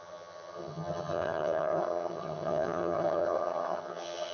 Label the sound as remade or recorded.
remade